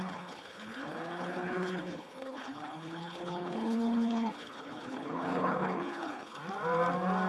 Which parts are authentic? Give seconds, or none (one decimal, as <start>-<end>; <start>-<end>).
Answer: 6.4-7.3